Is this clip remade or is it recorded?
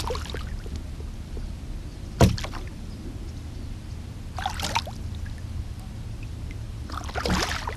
recorded